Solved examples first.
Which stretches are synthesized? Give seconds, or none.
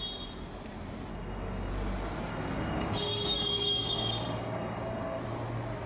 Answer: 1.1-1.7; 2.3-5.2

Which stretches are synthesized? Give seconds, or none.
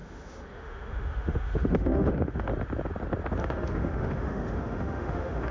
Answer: 0.0-2.5; 3.4-5.5